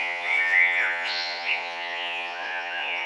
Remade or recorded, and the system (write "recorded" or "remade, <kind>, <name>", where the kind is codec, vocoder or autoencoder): remade, vocoder, Vocos